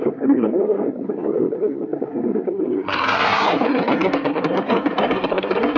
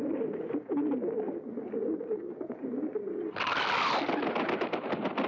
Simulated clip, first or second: first